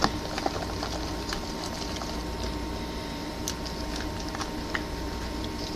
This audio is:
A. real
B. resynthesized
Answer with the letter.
A